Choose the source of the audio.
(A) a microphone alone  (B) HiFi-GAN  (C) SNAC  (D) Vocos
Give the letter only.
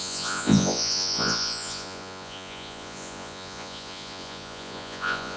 D